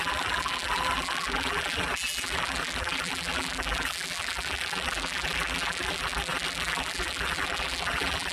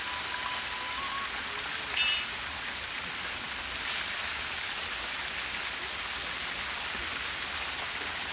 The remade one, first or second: first